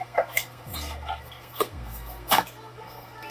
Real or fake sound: fake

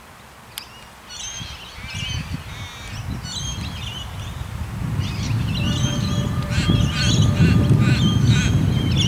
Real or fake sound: real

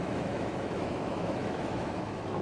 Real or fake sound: fake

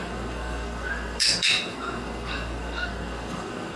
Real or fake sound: fake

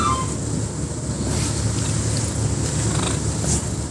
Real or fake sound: real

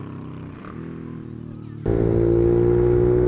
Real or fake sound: real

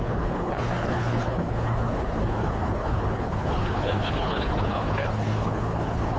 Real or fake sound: fake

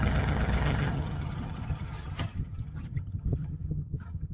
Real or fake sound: fake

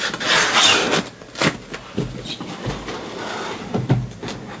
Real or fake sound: real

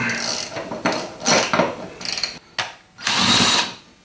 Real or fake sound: real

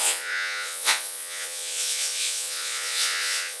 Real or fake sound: fake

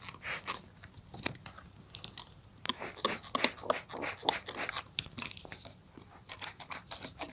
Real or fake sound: fake